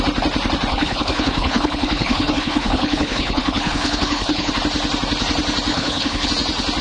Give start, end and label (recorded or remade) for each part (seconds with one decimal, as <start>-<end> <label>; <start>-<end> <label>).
0.0-0.7 recorded; 0.7-4.5 remade; 4.5-5.7 recorded; 5.7-6.3 remade; 6.3-6.8 recorded